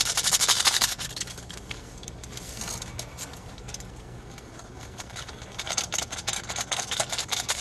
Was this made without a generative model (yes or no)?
no